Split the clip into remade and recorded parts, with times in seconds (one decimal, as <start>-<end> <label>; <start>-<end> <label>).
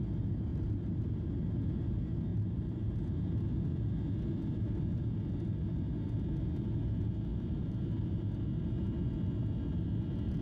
0.0-0.5 recorded; 0.5-1.3 remade; 1.3-2.3 recorded; 2.3-2.9 remade; 2.9-7.3 recorded; 7.3-7.8 remade; 7.8-10.4 recorded